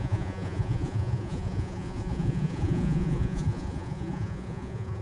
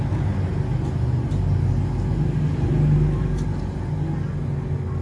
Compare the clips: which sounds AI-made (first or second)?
first